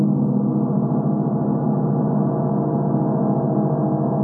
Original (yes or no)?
yes